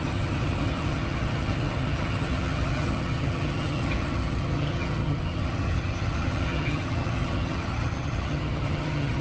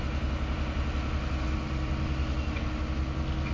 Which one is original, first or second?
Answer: second